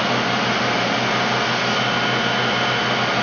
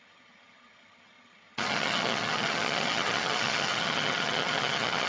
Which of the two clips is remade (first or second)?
second